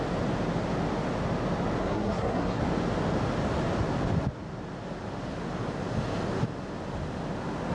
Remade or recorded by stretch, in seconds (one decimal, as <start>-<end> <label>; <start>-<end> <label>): 0.0-1.8 recorded; 1.8-2.6 remade; 2.6-7.7 recorded